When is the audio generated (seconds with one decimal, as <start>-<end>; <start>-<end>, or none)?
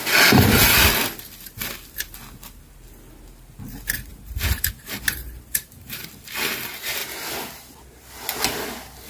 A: 4.1-6.1